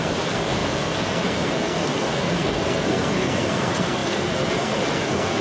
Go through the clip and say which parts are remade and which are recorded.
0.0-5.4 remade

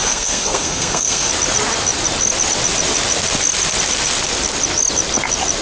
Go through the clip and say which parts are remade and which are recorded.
0.0-1.3 remade; 1.3-5.6 recorded

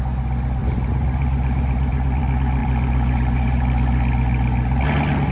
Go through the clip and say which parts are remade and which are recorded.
0.0-0.6 recorded; 0.6-2.2 remade; 2.2-2.6 recorded; 2.6-3.6 remade; 3.6-5.3 recorded

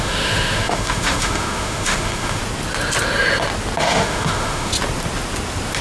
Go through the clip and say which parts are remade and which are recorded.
0.0-2.4 remade; 2.4-3.8 recorded; 3.8-4.7 remade; 4.7-5.8 recorded

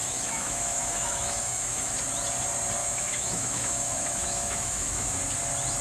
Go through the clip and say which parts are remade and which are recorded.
0.0-2.0 remade; 2.0-2.8 recorded; 2.8-5.2 remade; 5.2-5.8 recorded